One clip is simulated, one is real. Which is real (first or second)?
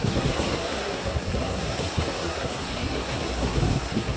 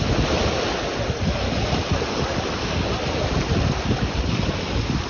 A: second